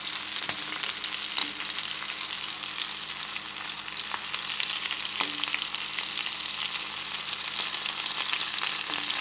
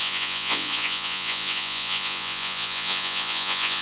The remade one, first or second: second